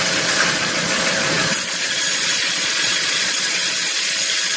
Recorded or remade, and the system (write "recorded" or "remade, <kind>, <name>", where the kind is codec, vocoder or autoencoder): remade, vocoder, Vocos